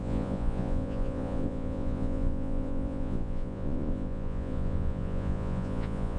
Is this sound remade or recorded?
remade